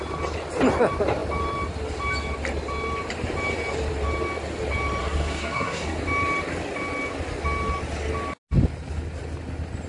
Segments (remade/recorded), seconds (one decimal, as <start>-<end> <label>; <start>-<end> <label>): 0.0-5.0 recorded; 5.0-6.0 remade; 6.0-9.9 recorded